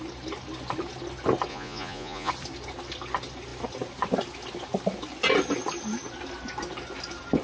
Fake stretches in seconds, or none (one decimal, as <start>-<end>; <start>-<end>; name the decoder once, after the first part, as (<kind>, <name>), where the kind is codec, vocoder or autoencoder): 1.5-2.3 (vocoder, Vocos)